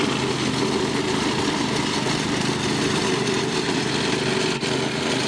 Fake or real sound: real